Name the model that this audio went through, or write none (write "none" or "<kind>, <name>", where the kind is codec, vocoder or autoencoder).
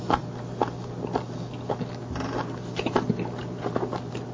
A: none